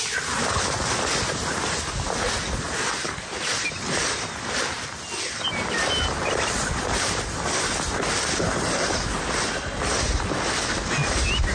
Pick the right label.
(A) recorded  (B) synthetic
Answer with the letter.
A